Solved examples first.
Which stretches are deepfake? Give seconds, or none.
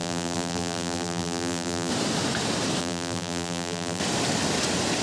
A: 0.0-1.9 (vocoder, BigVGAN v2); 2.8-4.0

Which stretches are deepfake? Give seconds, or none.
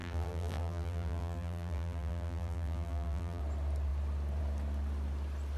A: 0.0-3.4 (vocoder, BigVGAN v2)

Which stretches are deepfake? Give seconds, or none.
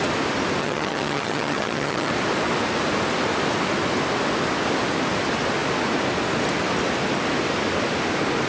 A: 0.6-2.1 (vocoder, HiFi-GAN)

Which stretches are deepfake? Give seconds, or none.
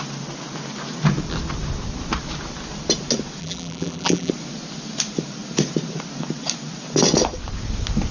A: 3.4-4.3 (vocoder, BigVGAN v2)